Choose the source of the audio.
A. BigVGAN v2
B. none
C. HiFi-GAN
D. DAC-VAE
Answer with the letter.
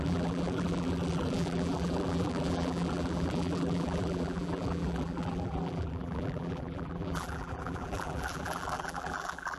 A